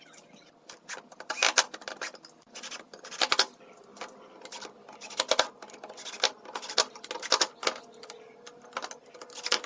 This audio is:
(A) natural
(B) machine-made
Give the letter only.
A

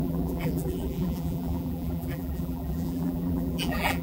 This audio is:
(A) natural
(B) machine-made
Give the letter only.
B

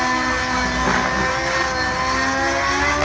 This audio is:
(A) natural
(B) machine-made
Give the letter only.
A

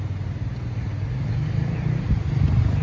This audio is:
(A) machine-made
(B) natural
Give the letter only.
B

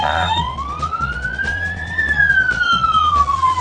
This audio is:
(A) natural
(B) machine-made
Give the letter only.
B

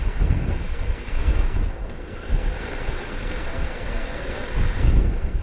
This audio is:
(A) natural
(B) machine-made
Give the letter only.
B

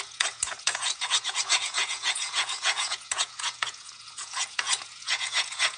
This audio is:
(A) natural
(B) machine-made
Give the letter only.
B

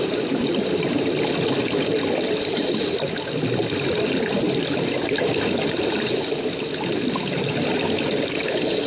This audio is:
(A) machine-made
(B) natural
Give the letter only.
B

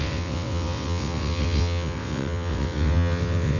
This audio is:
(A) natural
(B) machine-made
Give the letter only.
B